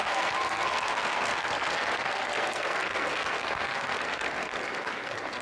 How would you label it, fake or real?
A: fake